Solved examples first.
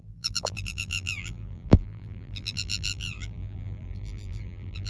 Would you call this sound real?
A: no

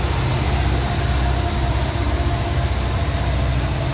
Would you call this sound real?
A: yes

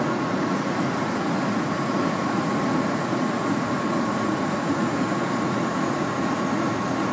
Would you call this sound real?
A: no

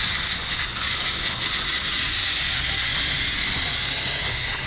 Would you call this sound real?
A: no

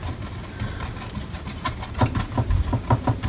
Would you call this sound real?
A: yes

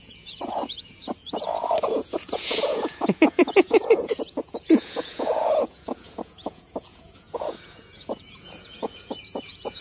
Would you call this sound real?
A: no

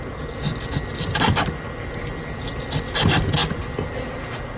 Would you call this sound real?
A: yes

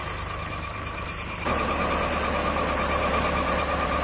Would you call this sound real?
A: yes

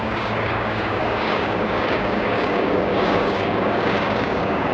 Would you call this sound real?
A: no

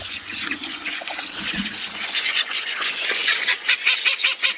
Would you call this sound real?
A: no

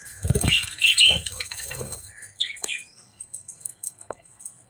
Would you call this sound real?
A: no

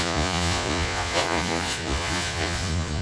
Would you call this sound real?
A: no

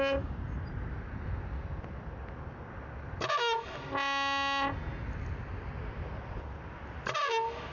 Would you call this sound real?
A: yes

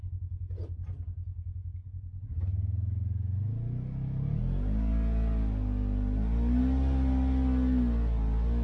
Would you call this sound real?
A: yes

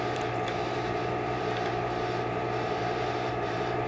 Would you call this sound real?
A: no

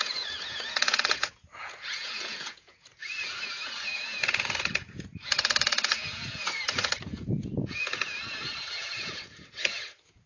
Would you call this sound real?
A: no